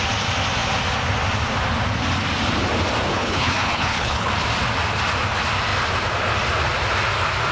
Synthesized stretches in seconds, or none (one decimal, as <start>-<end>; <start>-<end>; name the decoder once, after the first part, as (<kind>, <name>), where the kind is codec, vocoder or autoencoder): 3.1-4.3 (codec, HILCodec)